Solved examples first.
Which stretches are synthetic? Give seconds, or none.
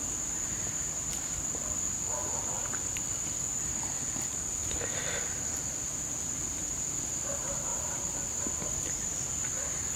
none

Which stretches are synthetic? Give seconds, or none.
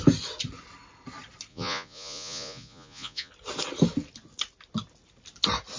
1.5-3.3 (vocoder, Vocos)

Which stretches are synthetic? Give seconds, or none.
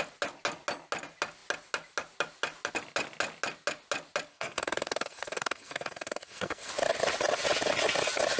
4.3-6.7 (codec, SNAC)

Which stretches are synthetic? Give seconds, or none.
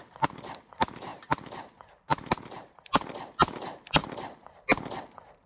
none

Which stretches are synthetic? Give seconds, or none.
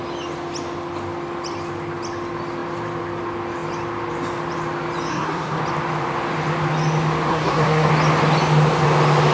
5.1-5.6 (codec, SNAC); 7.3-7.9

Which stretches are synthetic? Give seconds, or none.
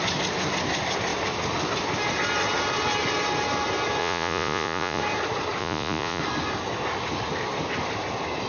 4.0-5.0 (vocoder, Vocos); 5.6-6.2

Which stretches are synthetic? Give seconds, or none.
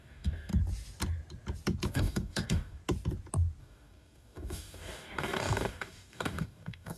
0.0-0.5 (codec, DAC); 1.9-2.8; 3.6-7.0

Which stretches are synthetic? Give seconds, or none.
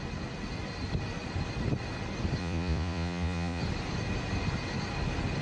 2.4-3.6 (vocoder, Vocos)